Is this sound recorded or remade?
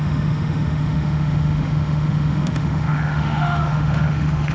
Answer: remade